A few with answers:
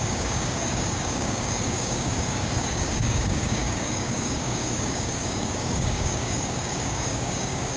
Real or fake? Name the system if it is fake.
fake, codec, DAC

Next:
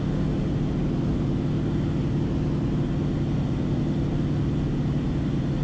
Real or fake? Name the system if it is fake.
real